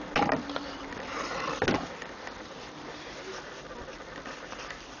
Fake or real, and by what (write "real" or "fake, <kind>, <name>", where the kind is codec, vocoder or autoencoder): real